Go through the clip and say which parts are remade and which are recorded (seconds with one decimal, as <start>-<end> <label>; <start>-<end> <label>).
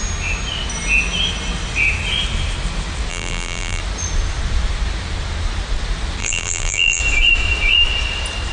0.0-3.1 recorded; 3.1-3.8 remade; 3.8-6.2 recorded; 6.2-7.0 remade; 7.0-8.5 recorded